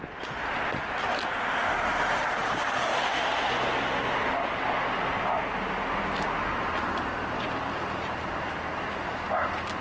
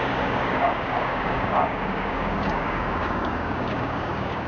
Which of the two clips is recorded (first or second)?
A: first